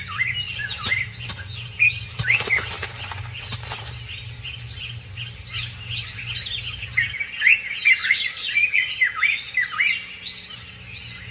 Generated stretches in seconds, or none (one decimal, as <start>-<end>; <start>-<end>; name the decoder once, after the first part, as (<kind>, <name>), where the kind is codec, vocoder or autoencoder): 8.0-8.9 (vocoder, Vocos)